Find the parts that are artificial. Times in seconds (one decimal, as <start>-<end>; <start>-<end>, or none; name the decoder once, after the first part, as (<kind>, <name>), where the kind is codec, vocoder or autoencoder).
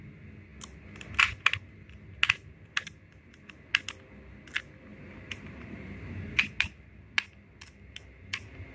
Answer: 4.9-6.4 (vocoder, BigVGAN v2)